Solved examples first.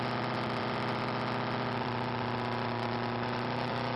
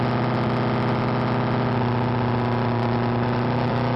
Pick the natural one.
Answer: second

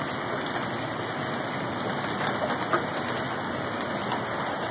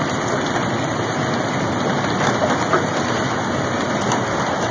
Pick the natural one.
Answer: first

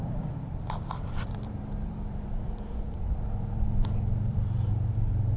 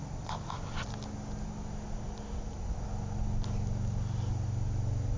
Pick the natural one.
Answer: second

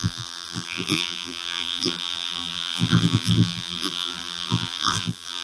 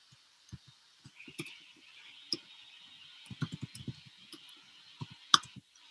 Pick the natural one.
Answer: second